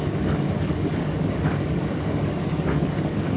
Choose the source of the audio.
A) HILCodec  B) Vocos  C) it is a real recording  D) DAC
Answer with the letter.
D